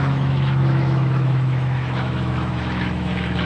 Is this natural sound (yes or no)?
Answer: no